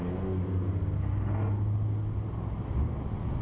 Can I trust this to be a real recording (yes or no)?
yes